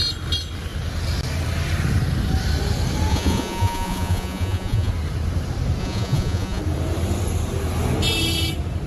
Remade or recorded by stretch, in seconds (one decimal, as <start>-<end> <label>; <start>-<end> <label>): 0.0-3.1 recorded; 3.1-4.9 remade; 4.9-5.8 recorded; 5.8-6.6 remade; 6.6-8.9 recorded